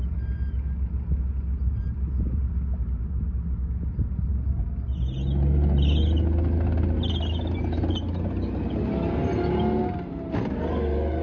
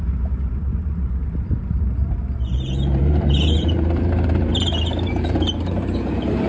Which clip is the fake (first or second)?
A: second